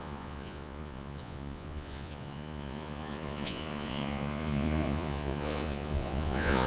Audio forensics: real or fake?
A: fake